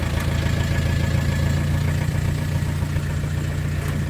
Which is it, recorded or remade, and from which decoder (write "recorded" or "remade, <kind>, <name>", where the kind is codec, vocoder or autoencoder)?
recorded